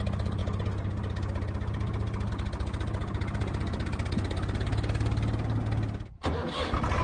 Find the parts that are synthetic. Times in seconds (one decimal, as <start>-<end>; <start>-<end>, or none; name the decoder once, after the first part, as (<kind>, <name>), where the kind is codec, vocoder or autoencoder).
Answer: none